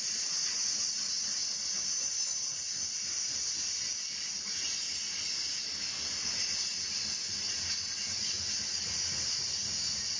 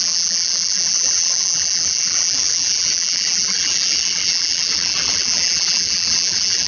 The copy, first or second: second